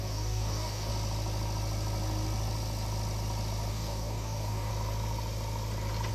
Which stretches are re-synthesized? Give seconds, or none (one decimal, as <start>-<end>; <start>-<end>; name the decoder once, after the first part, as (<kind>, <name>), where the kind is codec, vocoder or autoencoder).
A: 0.0-0.9 (codec, DAC); 3.7-4.7

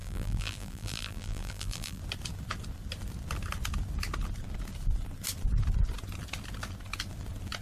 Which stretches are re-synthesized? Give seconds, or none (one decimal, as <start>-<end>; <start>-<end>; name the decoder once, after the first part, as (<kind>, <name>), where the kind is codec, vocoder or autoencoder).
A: 0.0-2.0 (vocoder, BigVGAN v2)

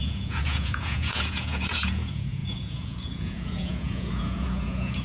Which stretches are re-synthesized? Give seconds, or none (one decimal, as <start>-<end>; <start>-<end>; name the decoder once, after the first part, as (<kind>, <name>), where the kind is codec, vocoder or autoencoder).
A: 0.0-5.0 (vocoder, Vocos)

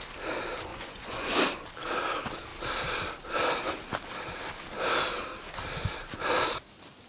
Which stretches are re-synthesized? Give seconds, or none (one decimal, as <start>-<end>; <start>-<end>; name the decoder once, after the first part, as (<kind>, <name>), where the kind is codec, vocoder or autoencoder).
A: 0.7-1.4 (vocoder, Vocos)

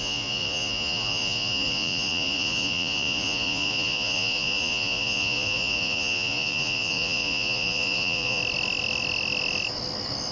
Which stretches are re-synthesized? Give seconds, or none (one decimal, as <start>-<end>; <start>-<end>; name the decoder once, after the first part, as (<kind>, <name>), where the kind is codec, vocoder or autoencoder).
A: 0.0-8.4 (vocoder, Vocos)

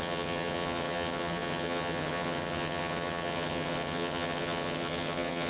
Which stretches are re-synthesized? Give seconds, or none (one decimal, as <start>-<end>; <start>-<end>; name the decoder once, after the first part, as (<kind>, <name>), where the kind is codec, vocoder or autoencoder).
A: 0.0-5.5 (vocoder, HiFi-GAN)

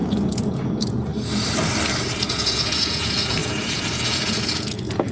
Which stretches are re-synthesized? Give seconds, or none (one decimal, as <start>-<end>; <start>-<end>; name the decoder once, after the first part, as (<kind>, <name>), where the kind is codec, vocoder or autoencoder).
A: 0.0-1.1 (vocoder, Vocos); 2.3-5.1